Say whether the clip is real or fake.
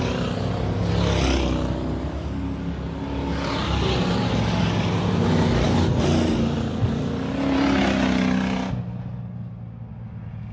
real